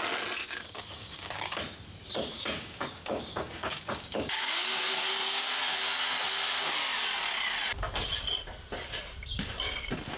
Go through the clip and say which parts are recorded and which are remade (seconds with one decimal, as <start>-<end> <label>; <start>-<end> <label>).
0.0-0.4 recorded; 0.4-1.6 remade; 1.6-2.3 recorded; 2.3-5.6 remade; 5.6-10.2 recorded